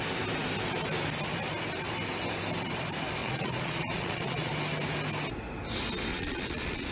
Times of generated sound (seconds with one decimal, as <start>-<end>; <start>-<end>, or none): 3.2-4.5; 6.1-6.9